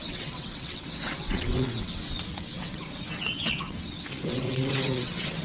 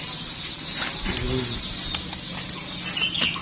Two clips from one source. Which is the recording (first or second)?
second